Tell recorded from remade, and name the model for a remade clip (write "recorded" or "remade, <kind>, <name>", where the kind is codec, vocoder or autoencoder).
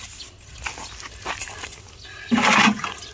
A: recorded